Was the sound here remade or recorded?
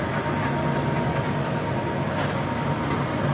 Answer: recorded